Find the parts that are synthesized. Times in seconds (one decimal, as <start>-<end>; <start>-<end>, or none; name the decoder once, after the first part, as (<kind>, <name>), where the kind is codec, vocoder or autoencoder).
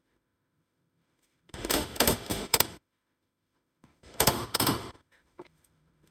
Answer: 0.0-6.1 (autoencoder, DAC-VAE)